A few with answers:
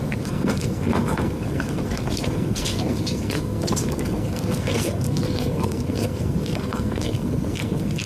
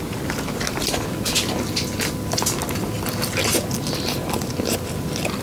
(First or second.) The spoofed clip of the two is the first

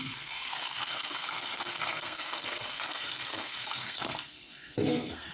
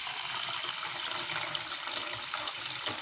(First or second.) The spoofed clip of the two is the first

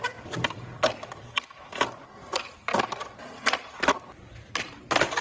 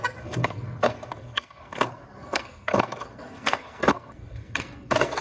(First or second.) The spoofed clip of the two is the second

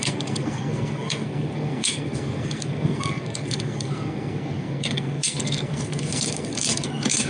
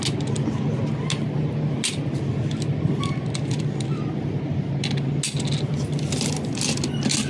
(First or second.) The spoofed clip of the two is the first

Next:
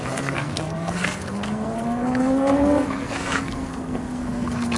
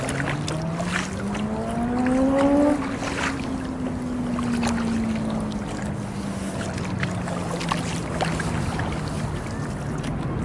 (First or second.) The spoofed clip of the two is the first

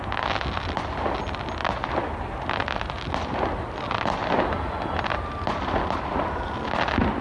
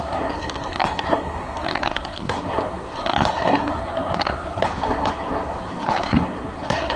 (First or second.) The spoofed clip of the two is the second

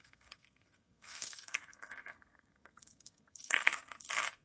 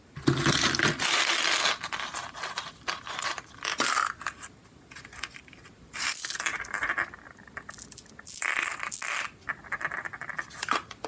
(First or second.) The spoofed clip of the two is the first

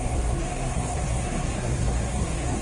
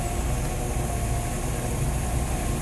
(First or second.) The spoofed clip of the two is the first